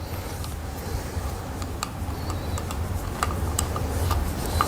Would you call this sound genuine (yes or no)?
yes